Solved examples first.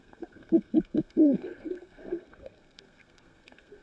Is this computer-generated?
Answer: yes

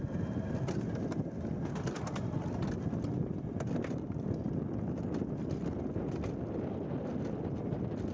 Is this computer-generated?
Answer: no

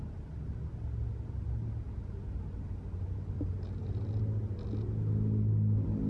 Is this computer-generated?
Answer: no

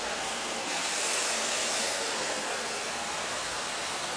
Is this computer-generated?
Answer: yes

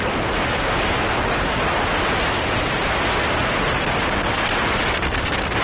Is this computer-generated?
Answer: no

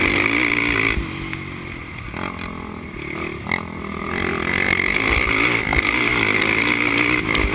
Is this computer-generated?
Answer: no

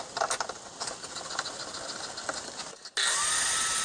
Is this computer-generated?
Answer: no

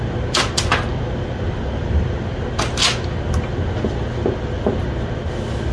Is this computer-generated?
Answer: no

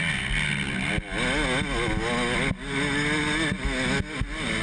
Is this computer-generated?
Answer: no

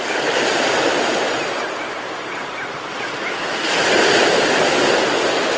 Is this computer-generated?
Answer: no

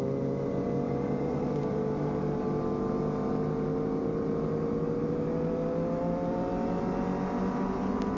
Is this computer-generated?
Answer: no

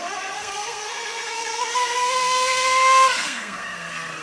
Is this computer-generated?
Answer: yes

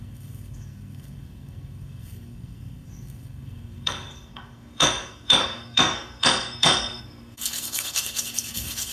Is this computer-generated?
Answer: yes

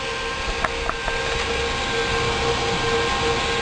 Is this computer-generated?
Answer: no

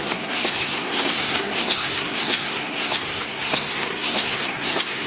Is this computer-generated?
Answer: yes